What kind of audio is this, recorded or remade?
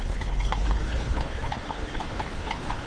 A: remade